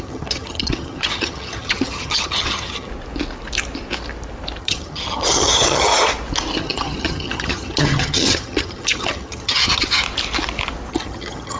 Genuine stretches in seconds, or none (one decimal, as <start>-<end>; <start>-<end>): 2.9-4.6; 5.9-6.6; 10.0-10.9